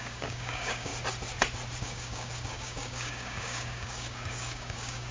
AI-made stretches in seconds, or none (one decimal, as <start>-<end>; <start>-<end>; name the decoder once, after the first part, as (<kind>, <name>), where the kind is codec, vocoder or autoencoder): 0.0-0.9 (codec, DAC); 1.8-5.1